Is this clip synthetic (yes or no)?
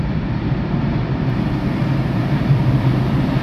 yes